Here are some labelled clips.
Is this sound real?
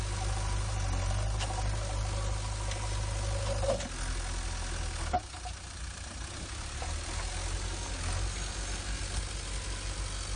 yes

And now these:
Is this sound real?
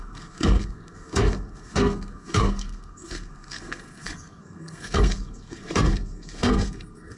no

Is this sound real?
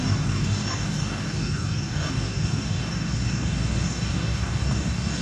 no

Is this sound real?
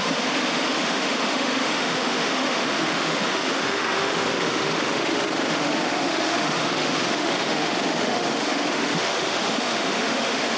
no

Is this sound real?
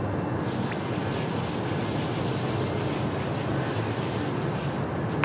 yes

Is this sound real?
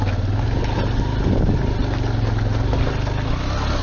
yes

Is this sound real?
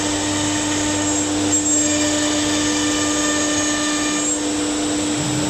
yes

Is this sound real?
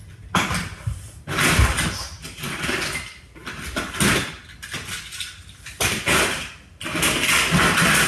yes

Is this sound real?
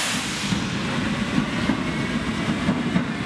yes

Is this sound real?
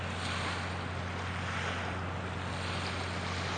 yes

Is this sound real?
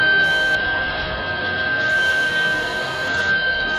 no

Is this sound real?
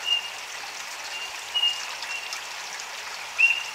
yes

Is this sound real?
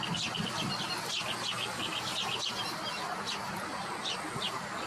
yes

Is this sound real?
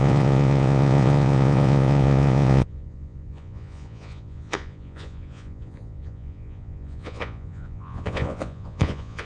no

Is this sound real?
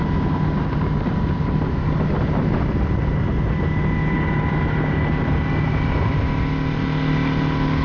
yes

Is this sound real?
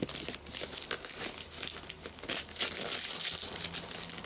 yes